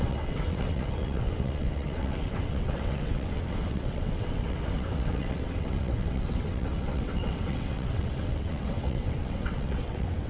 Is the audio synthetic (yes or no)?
yes